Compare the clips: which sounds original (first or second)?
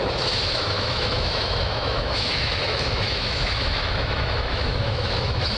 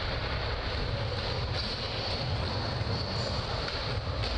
second